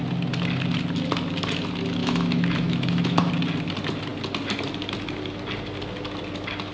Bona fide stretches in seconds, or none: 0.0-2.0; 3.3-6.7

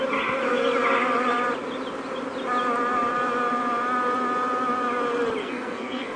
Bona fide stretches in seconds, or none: 0.0-5.4

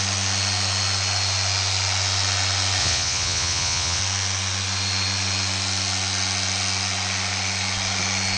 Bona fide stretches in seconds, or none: 0.0-2.8; 4.0-8.4

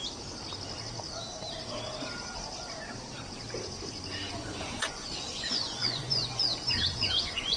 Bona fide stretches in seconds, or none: 0.0-4.3

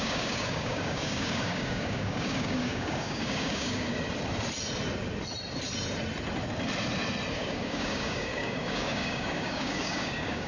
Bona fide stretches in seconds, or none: 3.9-7.3

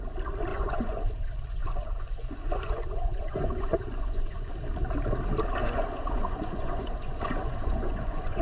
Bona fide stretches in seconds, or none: 0.0-0.5; 4.5-5.6